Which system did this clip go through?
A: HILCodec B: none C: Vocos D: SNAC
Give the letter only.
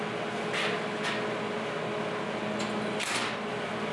B